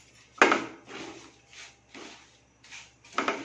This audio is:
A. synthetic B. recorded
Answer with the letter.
B